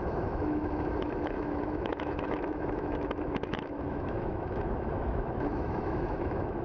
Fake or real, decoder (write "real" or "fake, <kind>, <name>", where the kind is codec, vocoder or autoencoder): fake, autoencoder, DAC-VAE